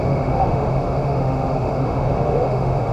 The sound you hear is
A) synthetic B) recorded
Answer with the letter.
A